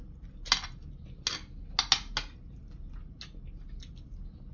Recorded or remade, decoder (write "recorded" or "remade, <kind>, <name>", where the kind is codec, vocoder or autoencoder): recorded